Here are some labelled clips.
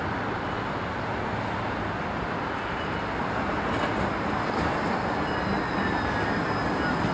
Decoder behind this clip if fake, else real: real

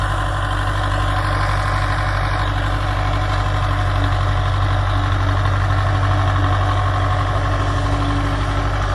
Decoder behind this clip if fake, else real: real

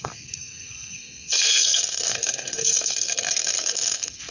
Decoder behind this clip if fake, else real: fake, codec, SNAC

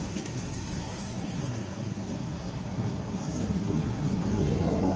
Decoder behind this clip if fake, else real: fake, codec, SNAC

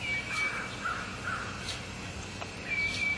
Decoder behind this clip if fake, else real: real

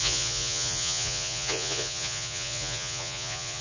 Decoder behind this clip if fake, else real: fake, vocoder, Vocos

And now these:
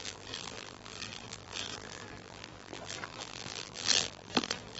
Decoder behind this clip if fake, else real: fake, vocoder, BigVGAN v2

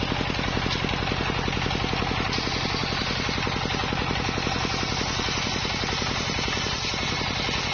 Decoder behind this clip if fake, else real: real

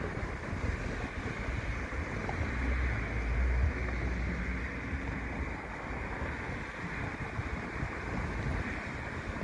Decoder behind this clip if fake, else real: real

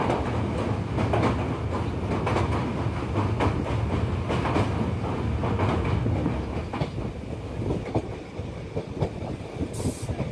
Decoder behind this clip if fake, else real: real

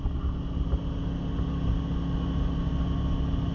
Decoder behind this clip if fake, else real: real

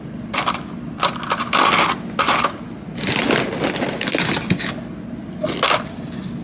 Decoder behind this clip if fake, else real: real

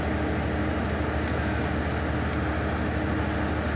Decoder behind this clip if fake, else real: real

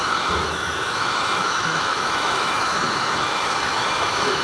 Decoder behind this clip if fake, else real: fake, autoencoder, DAC-VAE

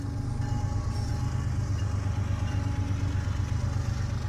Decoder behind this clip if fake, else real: real